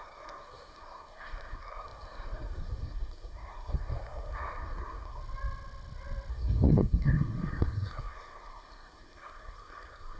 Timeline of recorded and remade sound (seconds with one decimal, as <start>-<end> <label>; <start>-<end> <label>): 0.0-5.2 remade; 5.2-6.3 recorded; 6.3-10.2 remade